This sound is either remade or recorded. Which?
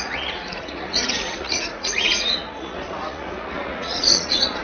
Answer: remade